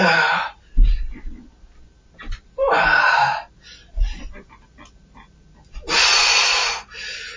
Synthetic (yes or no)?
no